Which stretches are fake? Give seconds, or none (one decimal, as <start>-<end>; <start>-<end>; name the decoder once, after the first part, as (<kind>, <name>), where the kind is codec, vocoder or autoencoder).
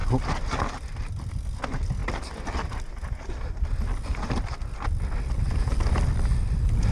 none